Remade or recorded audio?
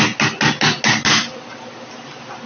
recorded